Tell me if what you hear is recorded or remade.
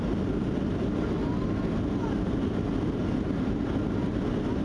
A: recorded